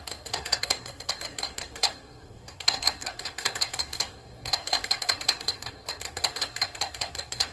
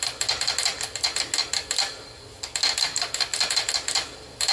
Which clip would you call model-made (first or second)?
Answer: first